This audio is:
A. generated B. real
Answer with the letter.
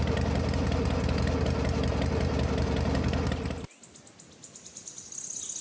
B